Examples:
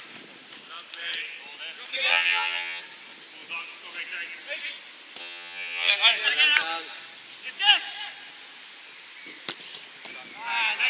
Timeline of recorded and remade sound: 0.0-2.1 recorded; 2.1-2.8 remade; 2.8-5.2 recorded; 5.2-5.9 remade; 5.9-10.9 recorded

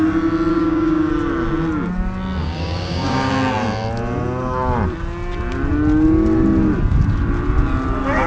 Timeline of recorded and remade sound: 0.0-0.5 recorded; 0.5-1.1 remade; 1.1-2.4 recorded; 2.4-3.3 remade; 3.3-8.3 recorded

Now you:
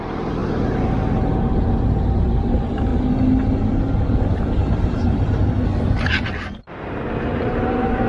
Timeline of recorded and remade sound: 0.0-2.9 remade; 2.9-4.3 recorded; 4.3-5.4 remade; 5.4-6.7 recorded; 6.7-8.1 remade

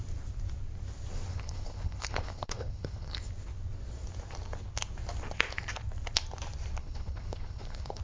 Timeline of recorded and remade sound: 0.0-1.3 recorded; 1.3-3.3 remade; 3.3-6.8 recorded; 6.8-8.0 remade

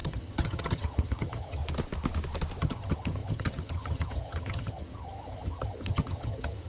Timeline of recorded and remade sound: 0.0-1.6 remade; 1.6-2.6 recorded; 2.6-6.7 remade

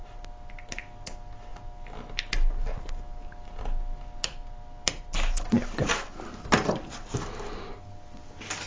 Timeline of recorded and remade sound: 0.0-8.7 recorded